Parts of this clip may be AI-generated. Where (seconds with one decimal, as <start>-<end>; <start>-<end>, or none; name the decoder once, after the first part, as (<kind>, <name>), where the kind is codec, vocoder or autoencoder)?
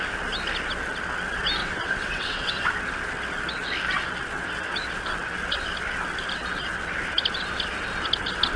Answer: 1.6-2.7 (vocoder, WaveNeXt)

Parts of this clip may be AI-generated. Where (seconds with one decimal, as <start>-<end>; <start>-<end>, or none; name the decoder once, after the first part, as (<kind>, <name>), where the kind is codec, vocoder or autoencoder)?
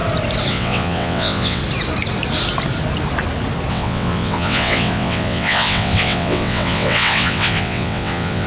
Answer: 0.5-1.6 (vocoder, WaveNeXt); 3.7-8.5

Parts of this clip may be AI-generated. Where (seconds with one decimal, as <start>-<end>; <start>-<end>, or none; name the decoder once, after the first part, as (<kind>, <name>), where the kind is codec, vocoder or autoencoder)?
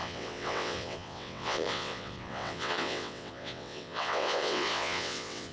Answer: 0.0-5.5 (vocoder, WaveNeXt)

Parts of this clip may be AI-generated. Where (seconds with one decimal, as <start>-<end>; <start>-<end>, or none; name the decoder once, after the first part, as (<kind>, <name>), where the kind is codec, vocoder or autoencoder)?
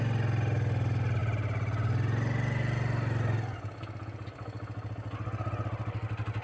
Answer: none